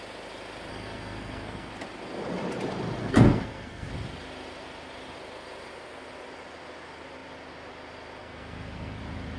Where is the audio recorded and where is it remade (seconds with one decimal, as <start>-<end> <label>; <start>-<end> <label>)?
0.0-0.7 recorded; 0.7-1.7 remade; 1.7-3.0 recorded; 3.0-3.9 remade; 3.9-8.2 recorded; 8.2-9.0 remade; 9.0-9.4 recorded